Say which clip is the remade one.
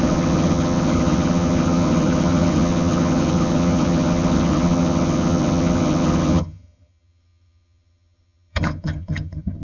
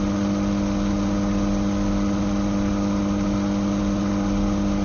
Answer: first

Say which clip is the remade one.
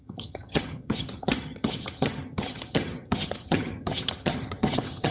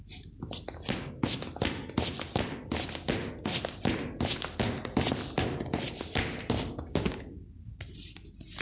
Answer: first